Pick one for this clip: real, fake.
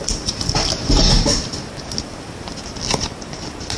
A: real